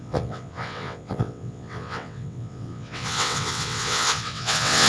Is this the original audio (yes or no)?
no